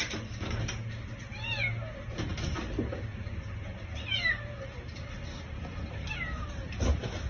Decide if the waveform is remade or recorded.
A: recorded